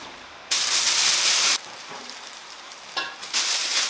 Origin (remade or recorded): remade